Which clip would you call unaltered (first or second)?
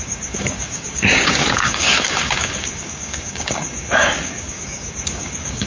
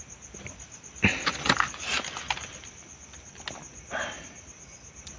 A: second